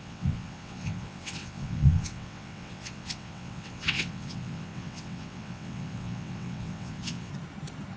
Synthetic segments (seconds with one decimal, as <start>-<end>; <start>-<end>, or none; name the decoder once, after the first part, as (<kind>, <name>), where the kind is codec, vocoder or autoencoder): 0.0-7.3 (vocoder, WaveNeXt)